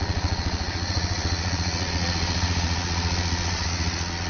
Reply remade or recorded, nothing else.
remade